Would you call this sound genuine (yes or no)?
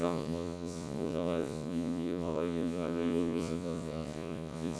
no